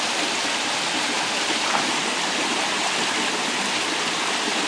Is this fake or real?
real